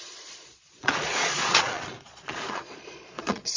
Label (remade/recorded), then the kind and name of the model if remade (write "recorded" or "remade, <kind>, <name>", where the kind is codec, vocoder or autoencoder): remade, vocoder, Vocos